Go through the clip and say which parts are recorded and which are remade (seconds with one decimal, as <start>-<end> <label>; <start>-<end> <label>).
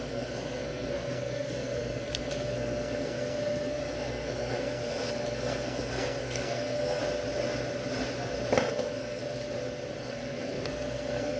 0.0-7.0 remade; 7.0-8.7 recorded; 8.7-9.2 remade; 9.2-10.0 recorded; 10.0-11.4 remade